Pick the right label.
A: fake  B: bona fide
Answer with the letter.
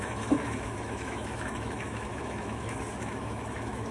A